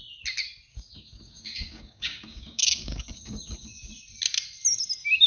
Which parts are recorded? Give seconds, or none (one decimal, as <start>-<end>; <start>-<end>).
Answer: 0.0-0.7; 3.9-5.3